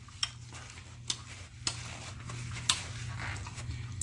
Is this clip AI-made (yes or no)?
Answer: no